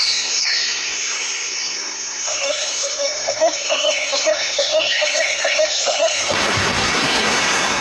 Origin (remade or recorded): remade